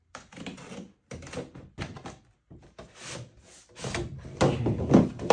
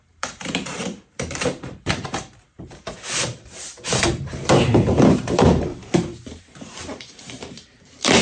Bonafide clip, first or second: first